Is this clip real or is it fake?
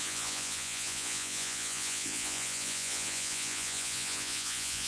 fake